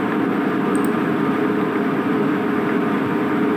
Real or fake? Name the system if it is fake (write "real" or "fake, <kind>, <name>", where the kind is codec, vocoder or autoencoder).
real